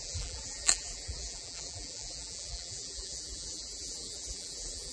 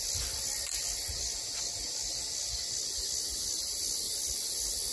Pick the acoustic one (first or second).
second